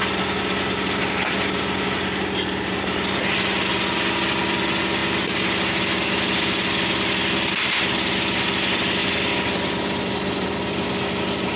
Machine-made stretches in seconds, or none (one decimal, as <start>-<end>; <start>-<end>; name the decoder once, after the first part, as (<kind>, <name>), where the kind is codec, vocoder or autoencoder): none